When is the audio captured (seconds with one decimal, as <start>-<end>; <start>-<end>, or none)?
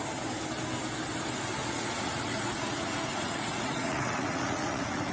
0.0-1.6